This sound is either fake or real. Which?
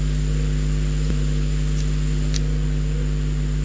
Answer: real